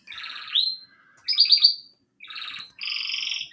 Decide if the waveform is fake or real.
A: real